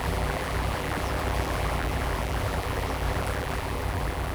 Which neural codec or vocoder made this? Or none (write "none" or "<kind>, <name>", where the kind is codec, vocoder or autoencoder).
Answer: vocoder, BigVGAN v2